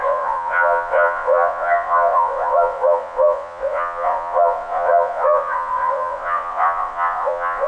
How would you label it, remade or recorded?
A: remade